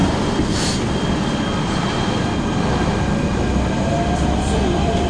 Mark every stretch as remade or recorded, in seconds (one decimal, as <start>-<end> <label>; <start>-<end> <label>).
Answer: 0.0-5.1 remade